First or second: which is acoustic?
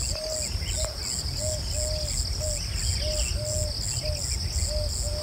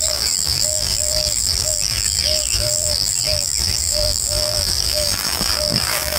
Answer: first